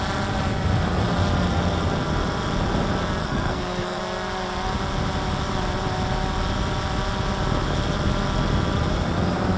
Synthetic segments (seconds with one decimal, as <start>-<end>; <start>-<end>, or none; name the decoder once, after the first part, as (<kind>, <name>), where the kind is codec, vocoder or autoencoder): 3.2-4.0 (codec, SNAC)